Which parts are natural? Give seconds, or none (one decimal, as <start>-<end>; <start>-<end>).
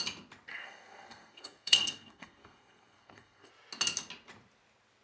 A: 0.0-0.5; 3.5-5.0